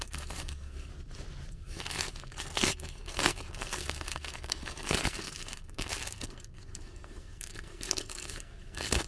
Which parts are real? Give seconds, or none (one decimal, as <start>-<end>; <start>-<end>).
0.9-1.5